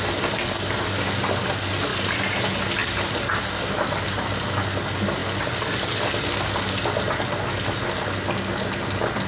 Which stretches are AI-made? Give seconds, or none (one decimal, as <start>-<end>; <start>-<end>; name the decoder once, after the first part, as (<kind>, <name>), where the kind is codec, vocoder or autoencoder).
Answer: 2.8-3.3 (vocoder, BigVGAN v2)